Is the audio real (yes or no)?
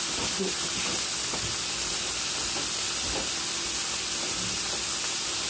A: yes